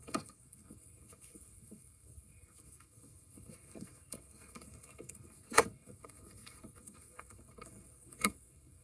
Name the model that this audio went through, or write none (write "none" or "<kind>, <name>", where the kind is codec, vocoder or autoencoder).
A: codec, SNAC